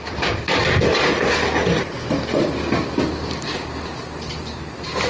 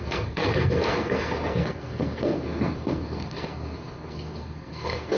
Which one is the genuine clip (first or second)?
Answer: first